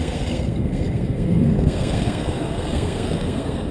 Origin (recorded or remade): remade